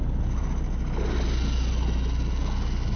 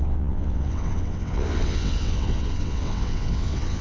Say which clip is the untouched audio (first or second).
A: first